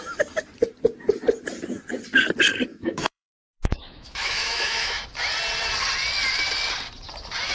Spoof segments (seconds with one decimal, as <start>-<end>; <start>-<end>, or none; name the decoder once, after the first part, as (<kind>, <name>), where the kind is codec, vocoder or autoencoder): 2.7-5.0 (autoencoder, DAC-VAE)